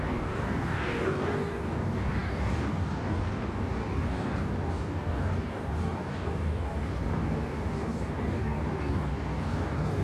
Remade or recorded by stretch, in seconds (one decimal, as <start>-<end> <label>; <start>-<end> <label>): 0.0-10.0 remade